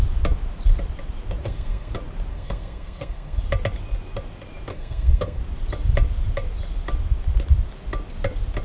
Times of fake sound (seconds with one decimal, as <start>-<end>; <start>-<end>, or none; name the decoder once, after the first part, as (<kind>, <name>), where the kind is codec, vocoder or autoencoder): 1.4-1.9 (codec, SNAC); 2.3-3.4; 4.7-5.4